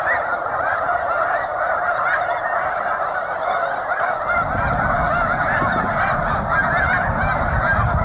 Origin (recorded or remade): recorded